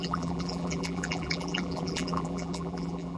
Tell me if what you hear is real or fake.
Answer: fake